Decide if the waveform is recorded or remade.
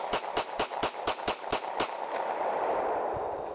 remade